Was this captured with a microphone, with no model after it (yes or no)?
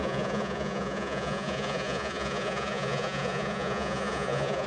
no